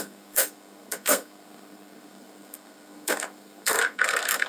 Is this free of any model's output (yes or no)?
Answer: no